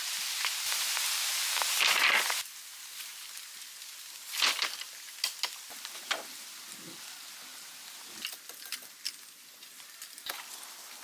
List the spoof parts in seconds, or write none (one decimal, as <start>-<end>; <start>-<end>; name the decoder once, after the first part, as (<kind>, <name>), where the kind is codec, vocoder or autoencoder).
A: none